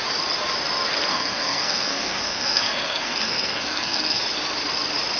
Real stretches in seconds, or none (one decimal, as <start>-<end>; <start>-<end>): 0.0-1.1; 4.2-5.2